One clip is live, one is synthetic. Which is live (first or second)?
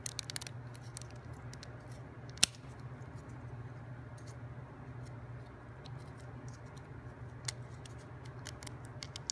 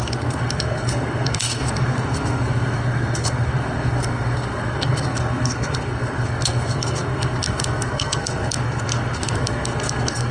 first